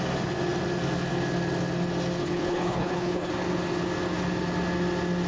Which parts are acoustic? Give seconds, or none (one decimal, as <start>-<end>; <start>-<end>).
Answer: 0.0-2.2; 3.3-5.3